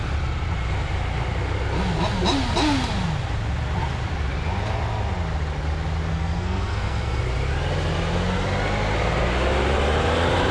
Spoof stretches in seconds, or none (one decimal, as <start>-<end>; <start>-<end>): 6.1-7.2